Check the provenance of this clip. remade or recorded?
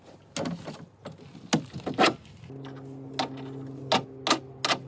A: recorded